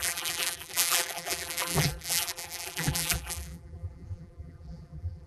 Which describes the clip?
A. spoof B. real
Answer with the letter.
A